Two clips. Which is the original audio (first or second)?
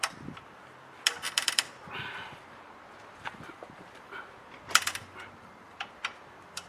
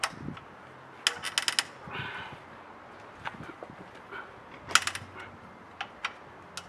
second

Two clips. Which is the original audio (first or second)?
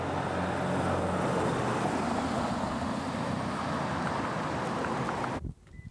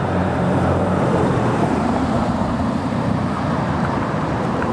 first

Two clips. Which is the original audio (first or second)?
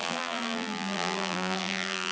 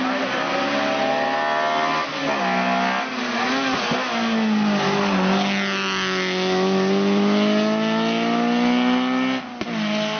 second